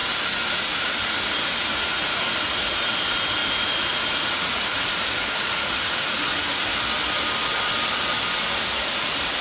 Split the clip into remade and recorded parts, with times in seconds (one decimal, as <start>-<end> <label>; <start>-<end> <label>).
0.0-0.5 recorded; 0.5-6.7 remade; 6.7-8.9 recorded; 8.9-9.4 remade